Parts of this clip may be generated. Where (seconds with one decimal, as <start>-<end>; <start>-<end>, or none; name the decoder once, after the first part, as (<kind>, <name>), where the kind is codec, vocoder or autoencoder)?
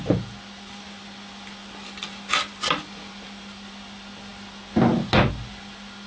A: none